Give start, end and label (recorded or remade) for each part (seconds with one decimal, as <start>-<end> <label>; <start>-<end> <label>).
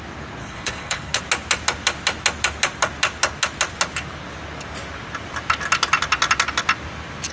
0.0-0.4 recorded; 0.4-1.2 remade; 1.2-7.3 recorded